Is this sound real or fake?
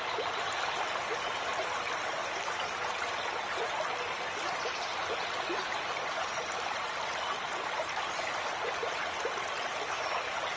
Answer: real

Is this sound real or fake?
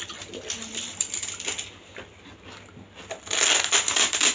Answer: real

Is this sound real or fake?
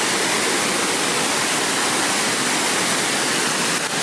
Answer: real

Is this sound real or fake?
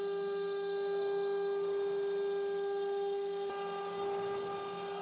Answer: real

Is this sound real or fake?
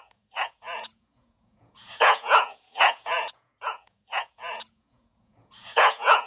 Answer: fake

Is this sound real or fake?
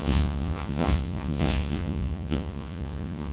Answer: fake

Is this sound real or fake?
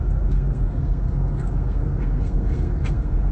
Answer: fake